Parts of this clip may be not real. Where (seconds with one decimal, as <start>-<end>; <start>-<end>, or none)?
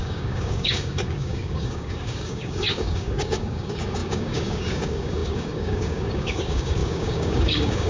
0.0-7.9